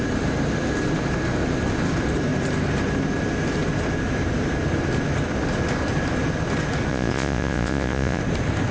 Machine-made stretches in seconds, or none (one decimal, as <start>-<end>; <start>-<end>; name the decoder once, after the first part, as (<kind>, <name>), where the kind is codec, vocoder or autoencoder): 6.9-8.2 (vocoder, Vocos)